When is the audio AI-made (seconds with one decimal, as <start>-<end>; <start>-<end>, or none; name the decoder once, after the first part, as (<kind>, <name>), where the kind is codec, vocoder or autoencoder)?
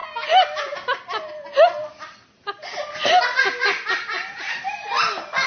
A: none